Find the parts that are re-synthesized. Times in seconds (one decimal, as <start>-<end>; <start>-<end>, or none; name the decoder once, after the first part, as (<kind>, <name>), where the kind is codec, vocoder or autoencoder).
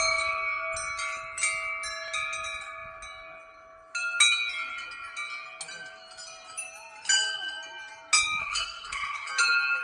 8.4-9.3 (codec, SNAC)